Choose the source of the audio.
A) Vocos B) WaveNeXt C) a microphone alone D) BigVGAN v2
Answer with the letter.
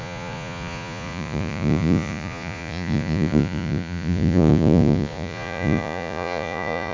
A